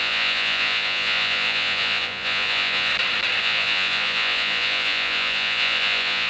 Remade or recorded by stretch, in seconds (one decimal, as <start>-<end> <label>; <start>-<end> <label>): 0.0-2.9 remade; 2.9-3.4 recorded; 3.4-6.3 remade